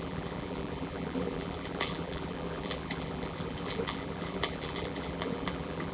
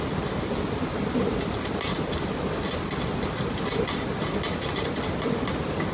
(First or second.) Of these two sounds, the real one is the second